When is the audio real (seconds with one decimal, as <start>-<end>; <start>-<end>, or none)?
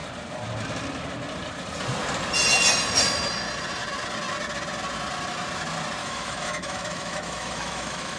0.0-6.0